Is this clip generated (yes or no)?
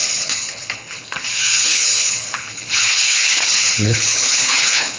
yes